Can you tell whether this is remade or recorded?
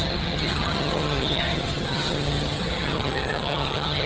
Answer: remade